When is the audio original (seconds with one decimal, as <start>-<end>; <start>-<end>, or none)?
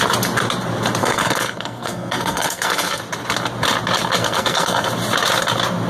0.0-1.0; 3.0-4.2; 4.9-5.9